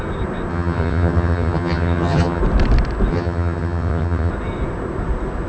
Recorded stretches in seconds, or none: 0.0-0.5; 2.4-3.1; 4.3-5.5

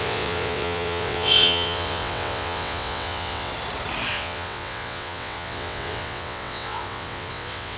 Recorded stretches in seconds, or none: 3.5-4.1

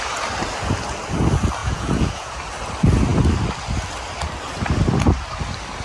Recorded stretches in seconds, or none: 0.0-1.6; 2.3-5.8

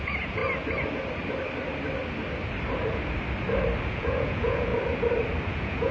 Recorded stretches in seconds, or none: 0.4-3.9; 4.7-5.5

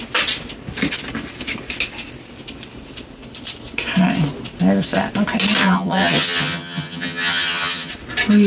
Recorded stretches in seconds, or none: 0.0-5.6; 7.9-8.5

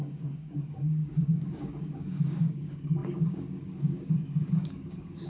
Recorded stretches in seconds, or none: none

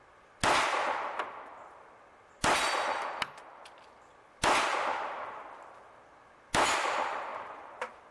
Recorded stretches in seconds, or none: 0.0-8.1

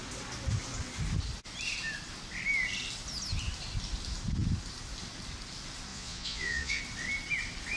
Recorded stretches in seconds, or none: 0.0-5.9; 6.8-7.8